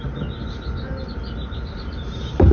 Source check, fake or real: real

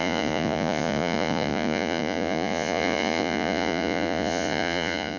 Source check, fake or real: fake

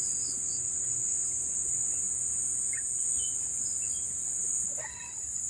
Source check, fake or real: real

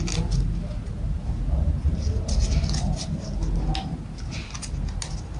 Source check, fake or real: real